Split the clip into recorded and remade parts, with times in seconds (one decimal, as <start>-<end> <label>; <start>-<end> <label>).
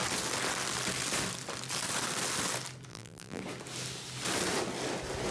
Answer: 0.0-2.9 recorded; 2.9-3.4 remade; 3.4-5.3 recorded